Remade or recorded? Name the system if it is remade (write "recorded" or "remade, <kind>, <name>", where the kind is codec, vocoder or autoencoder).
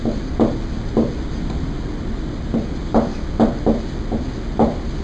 recorded